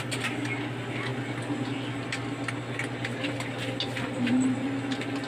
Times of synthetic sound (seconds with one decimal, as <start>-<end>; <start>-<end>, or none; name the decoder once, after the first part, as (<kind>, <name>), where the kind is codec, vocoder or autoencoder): none